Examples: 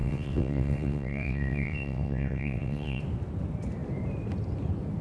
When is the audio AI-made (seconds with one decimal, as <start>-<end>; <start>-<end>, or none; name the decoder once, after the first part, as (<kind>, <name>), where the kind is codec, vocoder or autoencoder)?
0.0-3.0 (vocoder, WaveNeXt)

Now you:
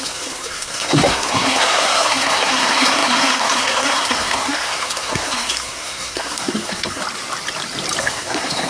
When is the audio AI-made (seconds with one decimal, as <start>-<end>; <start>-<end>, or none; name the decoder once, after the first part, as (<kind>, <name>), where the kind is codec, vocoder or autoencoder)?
0.0-7.0 (codec, SNAC); 8.0-8.7

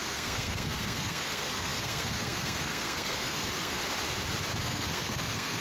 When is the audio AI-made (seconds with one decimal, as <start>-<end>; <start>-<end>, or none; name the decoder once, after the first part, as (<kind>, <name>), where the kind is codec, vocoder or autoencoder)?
0.0-3.8 (codec, SNAC); 4.6-5.6

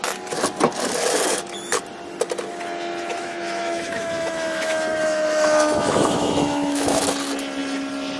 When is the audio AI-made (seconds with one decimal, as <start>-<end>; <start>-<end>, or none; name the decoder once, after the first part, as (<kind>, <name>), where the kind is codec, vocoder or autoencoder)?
3.1-7.0 (autoencoder, DAC-VAE)